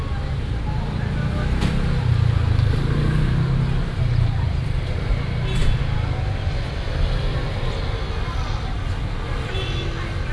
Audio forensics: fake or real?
real